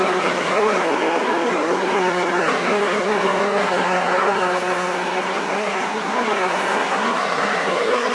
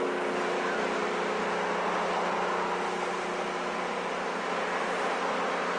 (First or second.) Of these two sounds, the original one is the second